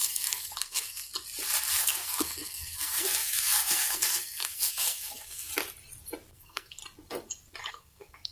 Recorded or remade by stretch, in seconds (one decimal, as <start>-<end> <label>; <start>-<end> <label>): 0.0-1.1 remade; 1.1-1.7 recorded; 1.7-5.5 remade; 5.5-6.3 recorded; 6.3-6.8 remade; 6.8-7.7 recorded; 7.7-8.3 remade